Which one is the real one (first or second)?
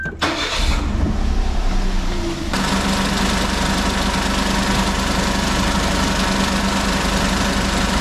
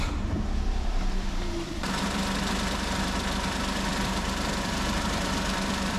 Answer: first